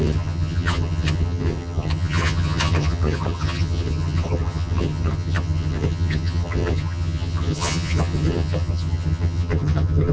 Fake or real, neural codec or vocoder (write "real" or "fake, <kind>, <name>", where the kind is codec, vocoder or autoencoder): fake, vocoder, HiFi-GAN